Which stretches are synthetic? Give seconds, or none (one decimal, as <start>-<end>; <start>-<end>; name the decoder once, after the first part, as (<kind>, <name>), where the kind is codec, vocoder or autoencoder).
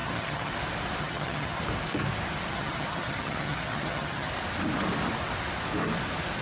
0.0-0.5 (vocoder, HiFi-GAN); 1.0-1.6; 2.5-4.3